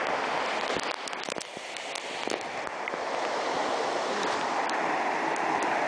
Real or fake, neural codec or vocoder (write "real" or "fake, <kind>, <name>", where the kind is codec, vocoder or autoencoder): real